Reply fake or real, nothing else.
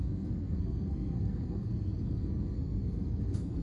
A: fake